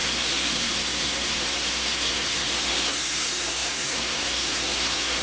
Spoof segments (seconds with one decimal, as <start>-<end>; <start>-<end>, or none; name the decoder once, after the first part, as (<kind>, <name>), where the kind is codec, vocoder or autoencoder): 0.0-5.2 (codec, SNAC)